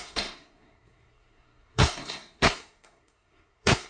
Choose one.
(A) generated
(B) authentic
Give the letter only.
A